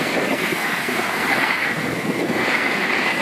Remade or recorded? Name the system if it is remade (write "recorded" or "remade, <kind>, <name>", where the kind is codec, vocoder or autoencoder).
remade, codec, SNAC